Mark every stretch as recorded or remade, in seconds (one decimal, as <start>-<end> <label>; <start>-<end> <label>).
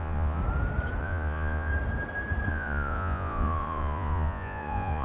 0.0-0.4 remade; 0.4-1.0 recorded; 1.0-1.7 remade; 1.7-2.5 recorded; 2.5-5.0 remade